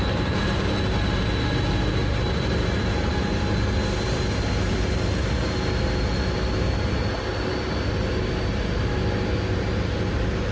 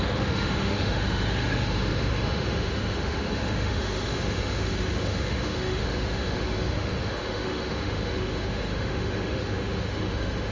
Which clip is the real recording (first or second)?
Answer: first